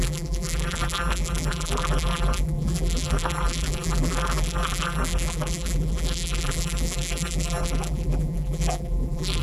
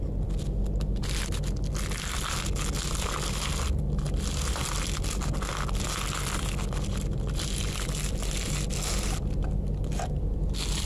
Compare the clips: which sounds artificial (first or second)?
first